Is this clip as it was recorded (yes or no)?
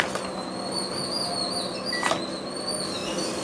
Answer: yes